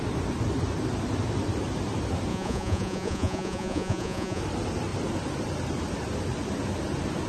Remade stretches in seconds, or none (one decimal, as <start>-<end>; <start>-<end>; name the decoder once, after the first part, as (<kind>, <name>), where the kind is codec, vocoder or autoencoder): 2.3-4.4 (vocoder, Vocos)